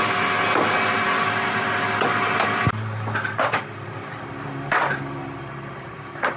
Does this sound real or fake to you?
real